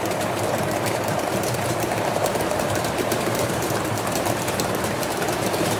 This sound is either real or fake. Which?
fake